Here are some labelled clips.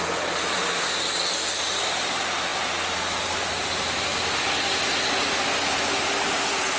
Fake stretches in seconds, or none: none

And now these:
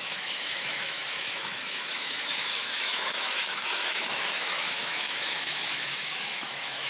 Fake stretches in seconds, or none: 0.0-6.9 (autoencoder, DAC-VAE)

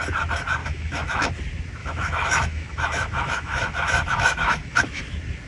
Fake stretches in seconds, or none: 0.6-1.3 (autoencoder, DAC-VAE); 1.8-5.0

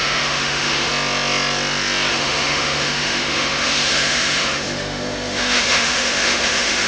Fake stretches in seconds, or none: 0.0-0.9 (autoencoder, DAC-VAE); 2.1-6.9

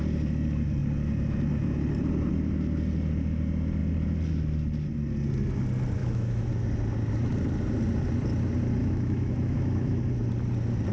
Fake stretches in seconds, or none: 6.0-6.5 (autoencoder, DAC-VAE); 8.8-10.0

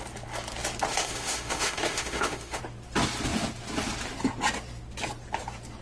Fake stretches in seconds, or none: 0.9-2.6 (autoencoder, DAC-VAE)

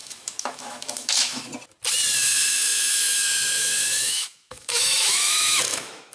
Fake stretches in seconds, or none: 0.0-1.5 (autoencoder, DAC-VAE); 2.2-6.1